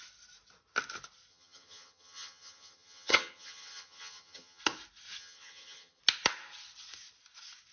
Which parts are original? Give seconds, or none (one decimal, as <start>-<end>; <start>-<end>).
0.0-1.3; 4.6-5.2; 6.0-7.7